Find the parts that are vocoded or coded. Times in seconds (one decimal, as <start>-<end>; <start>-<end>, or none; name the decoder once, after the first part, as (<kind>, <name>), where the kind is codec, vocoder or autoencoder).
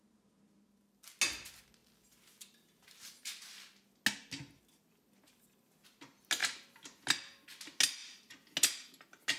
none